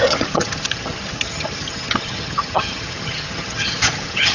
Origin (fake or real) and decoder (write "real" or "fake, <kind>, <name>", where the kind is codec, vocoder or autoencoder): fake, vocoder, HiFi-GAN